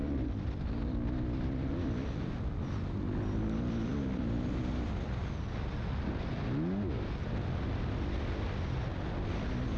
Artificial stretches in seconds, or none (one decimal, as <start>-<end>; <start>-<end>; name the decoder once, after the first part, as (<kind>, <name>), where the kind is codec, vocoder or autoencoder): none